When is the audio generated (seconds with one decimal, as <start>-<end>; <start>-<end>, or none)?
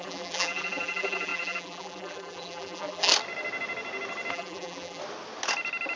0.0-3.1; 4.3-5.0